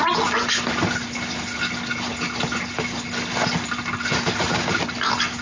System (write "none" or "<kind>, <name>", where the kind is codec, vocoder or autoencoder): none